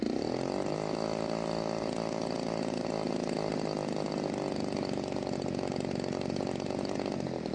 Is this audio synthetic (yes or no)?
no